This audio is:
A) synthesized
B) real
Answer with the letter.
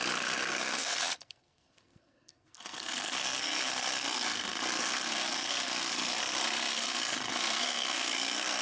A